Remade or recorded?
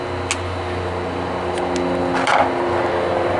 recorded